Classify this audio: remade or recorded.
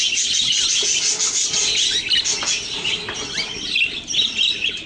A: recorded